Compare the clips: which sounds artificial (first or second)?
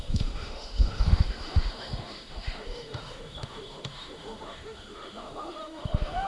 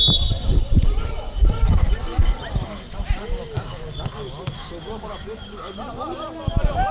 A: first